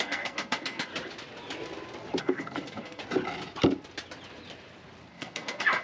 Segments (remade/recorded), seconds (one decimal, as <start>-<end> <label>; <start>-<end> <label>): 0.0-0.9 remade; 0.9-2.2 recorded; 2.2-3.0 remade; 3.0-5.1 recorded; 5.1-5.8 remade